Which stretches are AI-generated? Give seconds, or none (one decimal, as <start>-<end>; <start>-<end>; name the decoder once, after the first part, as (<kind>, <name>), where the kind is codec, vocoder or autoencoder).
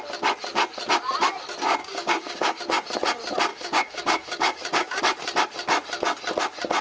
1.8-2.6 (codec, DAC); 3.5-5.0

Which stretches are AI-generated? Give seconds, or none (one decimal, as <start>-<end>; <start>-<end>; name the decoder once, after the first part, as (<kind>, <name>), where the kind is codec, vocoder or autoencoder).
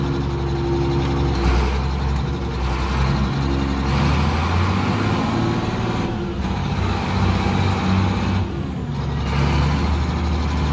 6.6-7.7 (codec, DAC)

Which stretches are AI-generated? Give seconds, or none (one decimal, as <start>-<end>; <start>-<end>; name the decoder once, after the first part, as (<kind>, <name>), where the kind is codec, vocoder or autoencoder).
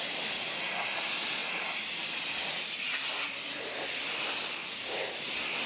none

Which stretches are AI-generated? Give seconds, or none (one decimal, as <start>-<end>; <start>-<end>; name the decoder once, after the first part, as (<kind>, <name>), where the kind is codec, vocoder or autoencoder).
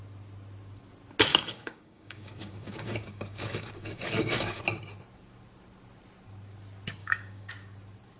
1.3-4.6 (codec, DAC); 7.0-7.5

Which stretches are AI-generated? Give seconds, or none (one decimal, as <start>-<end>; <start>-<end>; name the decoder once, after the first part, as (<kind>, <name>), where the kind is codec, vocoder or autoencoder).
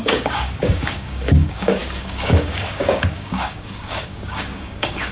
0.0-5.1 (codec, DAC)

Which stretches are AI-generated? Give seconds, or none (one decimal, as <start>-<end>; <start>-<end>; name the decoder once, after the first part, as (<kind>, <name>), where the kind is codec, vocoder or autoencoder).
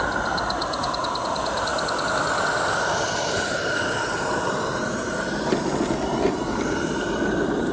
none